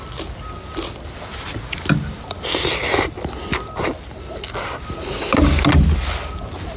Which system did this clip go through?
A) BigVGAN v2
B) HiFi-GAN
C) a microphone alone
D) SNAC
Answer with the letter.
C